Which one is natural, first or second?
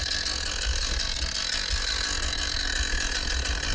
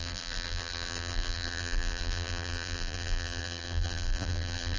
first